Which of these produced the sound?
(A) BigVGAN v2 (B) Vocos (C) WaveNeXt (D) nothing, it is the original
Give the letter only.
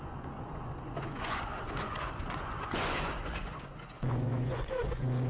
B